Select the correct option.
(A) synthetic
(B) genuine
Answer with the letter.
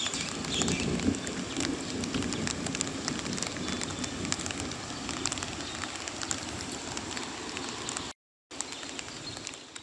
B